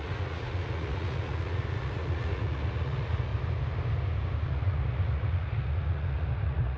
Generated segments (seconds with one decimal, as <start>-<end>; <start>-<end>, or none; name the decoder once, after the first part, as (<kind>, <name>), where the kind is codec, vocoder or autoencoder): 0.0-3.3 (vocoder, Vocos); 4.4-6.8

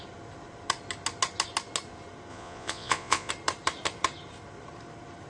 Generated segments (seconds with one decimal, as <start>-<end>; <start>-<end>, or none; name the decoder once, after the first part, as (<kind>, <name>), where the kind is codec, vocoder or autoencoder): 2.3-3.3 (vocoder, Vocos)

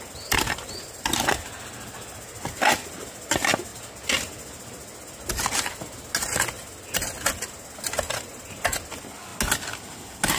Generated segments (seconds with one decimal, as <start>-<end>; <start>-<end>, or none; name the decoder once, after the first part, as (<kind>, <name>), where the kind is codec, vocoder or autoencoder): none

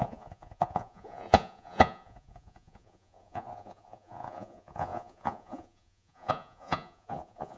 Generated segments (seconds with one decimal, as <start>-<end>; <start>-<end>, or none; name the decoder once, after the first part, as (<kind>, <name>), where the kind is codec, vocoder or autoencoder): 0.0-7.6 (vocoder, Vocos)